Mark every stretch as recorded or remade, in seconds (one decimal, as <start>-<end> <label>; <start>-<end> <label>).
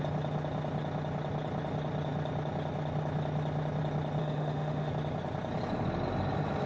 0.0-4.2 recorded; 4.2-4.9 remade; 4.9-6.7 recorded